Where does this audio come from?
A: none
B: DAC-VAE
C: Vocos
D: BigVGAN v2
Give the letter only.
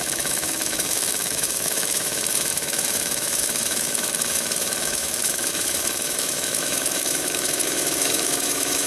B